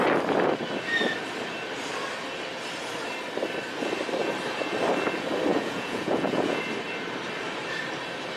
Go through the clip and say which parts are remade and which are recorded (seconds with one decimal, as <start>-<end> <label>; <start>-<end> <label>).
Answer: 0.0-5.5 recorded; 5.5-6.6 remade; 6.6-8.4 recorded